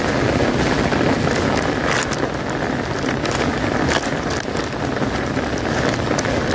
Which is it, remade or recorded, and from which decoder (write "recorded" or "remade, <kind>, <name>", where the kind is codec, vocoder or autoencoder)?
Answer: recorded